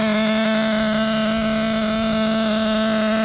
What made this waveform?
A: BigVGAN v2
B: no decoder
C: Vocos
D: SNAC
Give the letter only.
B